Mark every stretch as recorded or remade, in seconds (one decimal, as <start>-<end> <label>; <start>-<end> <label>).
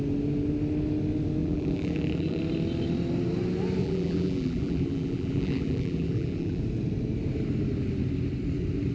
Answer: 0.0-1.4 recorded; 1.4-2.4 remade; 2.4-3.8 recorded; 3.8-6.6 remade; 6.6-8.9 recorded